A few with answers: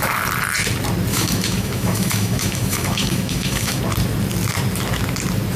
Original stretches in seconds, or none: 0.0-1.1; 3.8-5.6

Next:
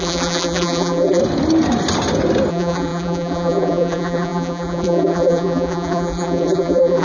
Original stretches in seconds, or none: 1.2-2.5

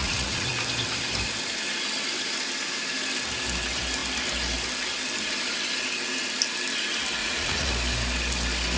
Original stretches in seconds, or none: 0.5-7.2; 7.7-8.8